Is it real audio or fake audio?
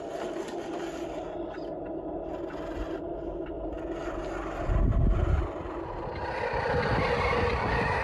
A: real